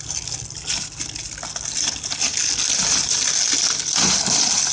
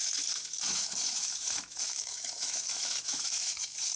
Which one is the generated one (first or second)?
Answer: second